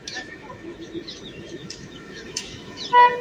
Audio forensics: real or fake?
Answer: fake